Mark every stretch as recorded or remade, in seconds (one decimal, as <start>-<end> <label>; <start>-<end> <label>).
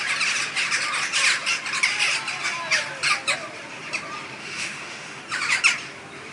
0.0-4.4 recorded; 4.4-5.2 remade; 5.2-6.3 recorded